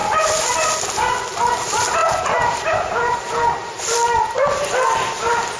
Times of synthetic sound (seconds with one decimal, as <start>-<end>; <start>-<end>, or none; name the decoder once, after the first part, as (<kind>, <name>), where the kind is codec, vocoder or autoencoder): none